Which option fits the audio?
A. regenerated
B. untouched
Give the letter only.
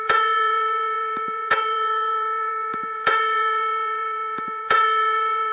A